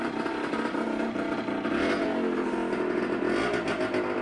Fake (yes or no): no